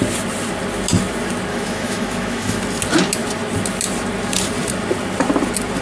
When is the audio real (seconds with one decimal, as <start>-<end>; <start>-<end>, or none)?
0.0-1.5; 2.6-5.8